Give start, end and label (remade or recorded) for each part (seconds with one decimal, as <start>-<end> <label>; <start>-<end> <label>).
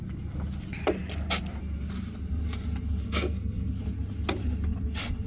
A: 0.0-3.0 recorded; 3.0-3.7 remade; 3.7-5.3 recorded